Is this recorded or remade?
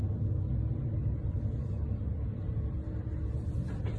recorded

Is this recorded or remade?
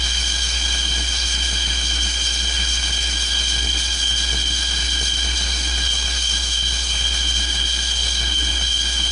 remade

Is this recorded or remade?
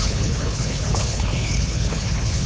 remade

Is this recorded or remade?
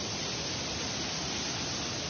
recorded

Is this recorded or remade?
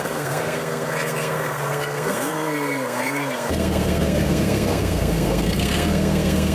remade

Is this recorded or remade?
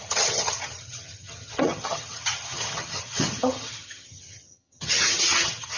remade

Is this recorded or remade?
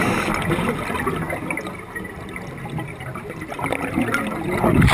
recorded